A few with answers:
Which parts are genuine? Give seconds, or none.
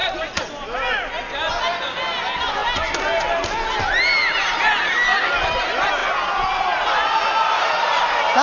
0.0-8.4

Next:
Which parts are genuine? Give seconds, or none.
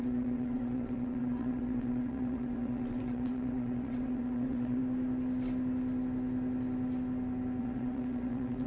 4.8-7.6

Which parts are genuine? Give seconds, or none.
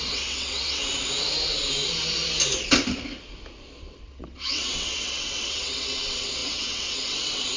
0.8-3.8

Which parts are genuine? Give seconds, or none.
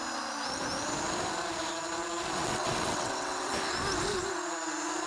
0.0-2.4; 3.5-5.1